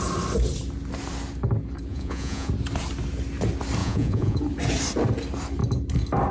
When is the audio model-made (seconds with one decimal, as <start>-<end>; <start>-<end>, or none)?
1.9-2.5; 3.8-4.4